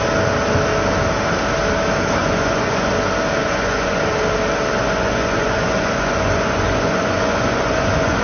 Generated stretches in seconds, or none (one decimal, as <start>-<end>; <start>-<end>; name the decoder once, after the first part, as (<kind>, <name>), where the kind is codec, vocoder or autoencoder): 2.2-2.9 (vocoder, Vocos); 3.4-4.0; 4.8-8.2